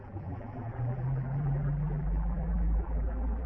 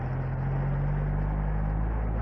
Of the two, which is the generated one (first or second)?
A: first